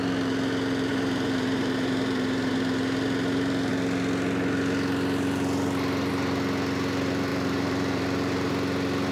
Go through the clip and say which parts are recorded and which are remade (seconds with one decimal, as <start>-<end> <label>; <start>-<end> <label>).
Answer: 0.0-0.9 recorded; 0.9-2.5 remade; 2.5-7.3 recorded; 7.3-8.5 remade; 8.5-9.1 recorded